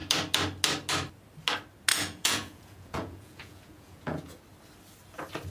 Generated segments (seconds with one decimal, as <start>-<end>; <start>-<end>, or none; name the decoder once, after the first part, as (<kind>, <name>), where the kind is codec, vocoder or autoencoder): 1.9-4.4 (vocoder, Vocos)